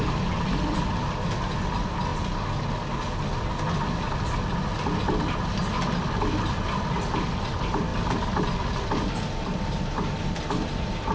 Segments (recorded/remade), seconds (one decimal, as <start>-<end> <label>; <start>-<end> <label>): 0.0-11.1 recorded